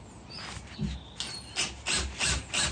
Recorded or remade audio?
recorded